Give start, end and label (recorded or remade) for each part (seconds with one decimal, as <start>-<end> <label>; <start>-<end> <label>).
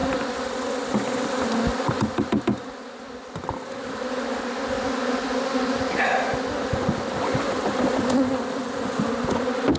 0.0-9.8 recorded